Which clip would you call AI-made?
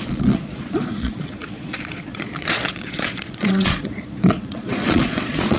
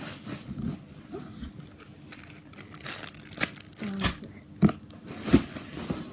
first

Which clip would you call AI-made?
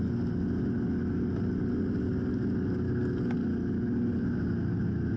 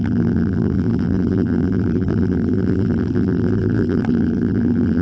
second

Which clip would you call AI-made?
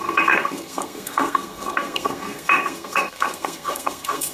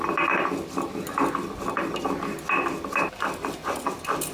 first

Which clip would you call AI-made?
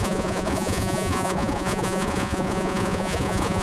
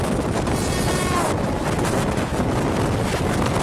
first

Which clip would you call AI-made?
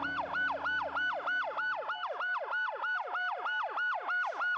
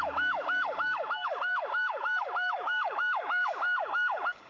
second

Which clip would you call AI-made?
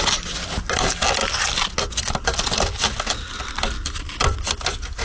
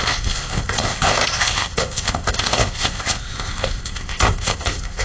second